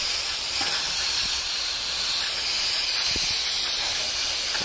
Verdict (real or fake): real